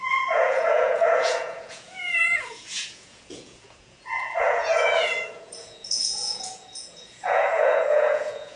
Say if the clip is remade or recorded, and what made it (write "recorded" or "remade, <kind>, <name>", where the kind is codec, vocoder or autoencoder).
remade, vocoder, Vocos